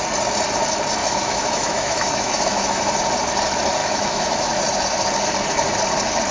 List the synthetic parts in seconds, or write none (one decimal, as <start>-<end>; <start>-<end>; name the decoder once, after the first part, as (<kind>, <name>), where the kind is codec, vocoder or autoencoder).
1.0-2.9 (autoencoder, DAC-VAE); 3.8-4.6